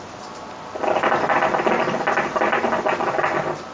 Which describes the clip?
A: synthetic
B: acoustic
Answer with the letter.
B